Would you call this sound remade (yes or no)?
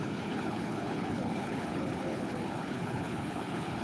yes